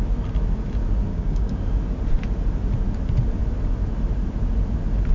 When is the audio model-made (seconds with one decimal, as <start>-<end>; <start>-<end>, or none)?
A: 1.1-1.6